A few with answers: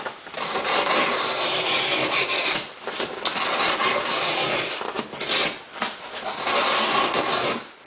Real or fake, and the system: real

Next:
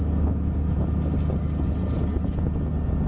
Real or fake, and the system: real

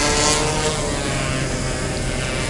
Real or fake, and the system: real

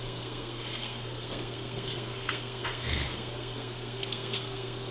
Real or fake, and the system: fake, codec, SNAC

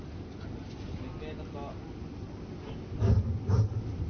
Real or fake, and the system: real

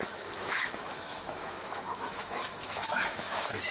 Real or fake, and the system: fake, autoencoder, DAC-VAE